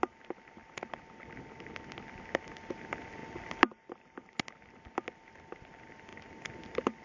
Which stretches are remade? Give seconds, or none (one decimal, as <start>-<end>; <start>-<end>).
none